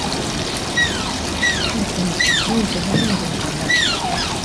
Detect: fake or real real